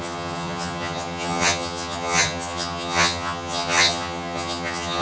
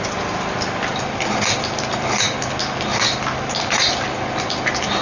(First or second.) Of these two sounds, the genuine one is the second